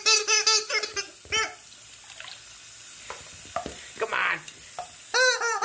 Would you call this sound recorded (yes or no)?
yes